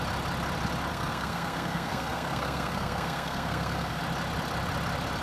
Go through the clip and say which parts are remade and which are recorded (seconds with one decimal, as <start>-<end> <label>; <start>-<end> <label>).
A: 0.0-0.9 recorded; 0.9-4.0 remade; 4.0-5.2 recorded